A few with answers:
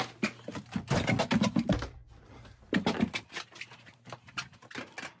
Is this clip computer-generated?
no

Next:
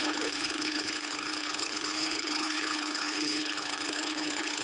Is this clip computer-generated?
yes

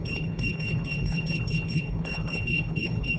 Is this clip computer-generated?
yes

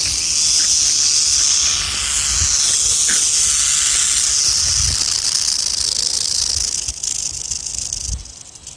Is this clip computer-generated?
no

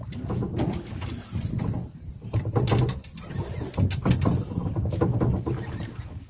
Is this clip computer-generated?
no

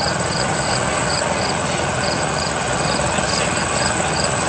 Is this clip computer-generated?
yes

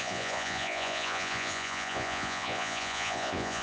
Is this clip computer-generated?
yes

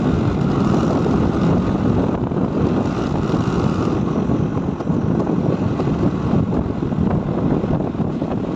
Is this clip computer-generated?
no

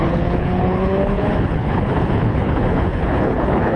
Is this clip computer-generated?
yes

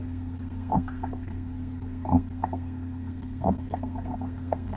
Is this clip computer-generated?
yes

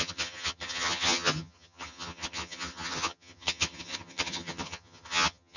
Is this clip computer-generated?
yes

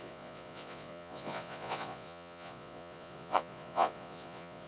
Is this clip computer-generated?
yes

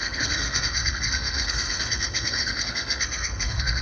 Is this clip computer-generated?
yes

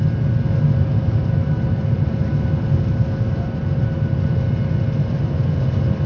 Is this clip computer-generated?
no